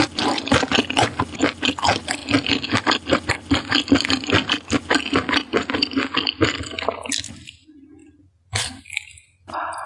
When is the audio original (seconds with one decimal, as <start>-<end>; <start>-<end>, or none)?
0.0-9.9